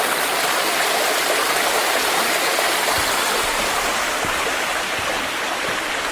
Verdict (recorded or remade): recorded